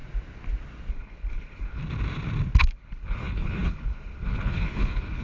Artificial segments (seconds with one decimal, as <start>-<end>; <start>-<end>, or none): 0.9-1.8; 2.6-5.2